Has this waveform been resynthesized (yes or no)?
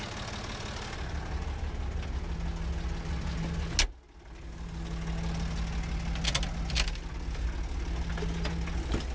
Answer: no